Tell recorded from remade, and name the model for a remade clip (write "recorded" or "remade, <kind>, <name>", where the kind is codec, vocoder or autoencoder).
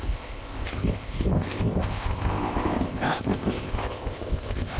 remade, codec, ZipCodec